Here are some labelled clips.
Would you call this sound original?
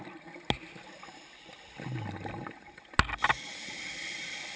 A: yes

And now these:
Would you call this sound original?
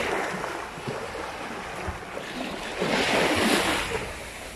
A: yes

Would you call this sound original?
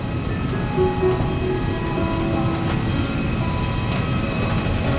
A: yes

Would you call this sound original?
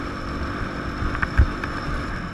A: yes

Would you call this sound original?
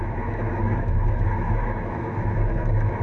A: no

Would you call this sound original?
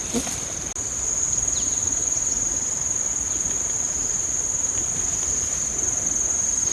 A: yes